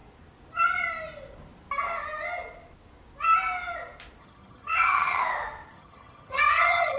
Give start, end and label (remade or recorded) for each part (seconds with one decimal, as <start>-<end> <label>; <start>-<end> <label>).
0.0-4.2 recorded; 4.2-5.2 remade; 5.2-5.7 recorded; 5.7-7.0 remade